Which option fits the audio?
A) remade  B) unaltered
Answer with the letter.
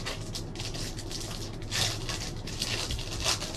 B